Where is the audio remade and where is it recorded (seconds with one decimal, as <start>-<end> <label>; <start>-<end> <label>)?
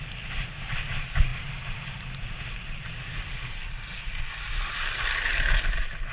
0.0-6.1 recorded